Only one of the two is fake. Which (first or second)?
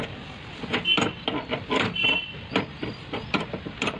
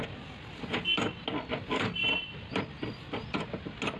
first